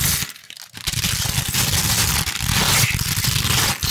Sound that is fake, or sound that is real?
real